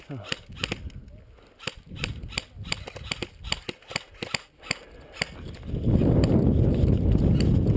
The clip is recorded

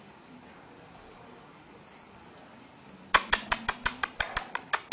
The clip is recorded